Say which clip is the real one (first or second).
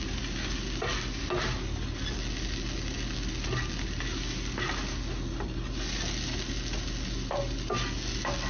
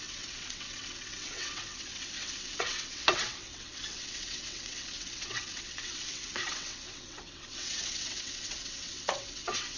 first